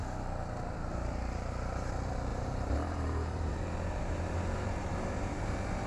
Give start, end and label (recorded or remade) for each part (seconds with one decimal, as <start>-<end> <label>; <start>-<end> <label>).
0.0-2.3 recorded; 2.3-5.9 remade